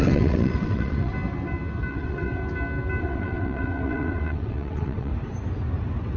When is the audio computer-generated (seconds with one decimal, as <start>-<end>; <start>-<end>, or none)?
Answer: 0.0-1.1; 1.9-2.4; 3.0-5.1

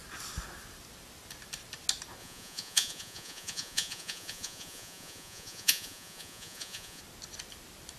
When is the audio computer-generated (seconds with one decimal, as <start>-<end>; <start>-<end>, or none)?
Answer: 2.2-7.0